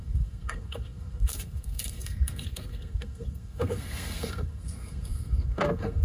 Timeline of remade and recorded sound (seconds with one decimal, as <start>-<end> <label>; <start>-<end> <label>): 0.0-6.0 remade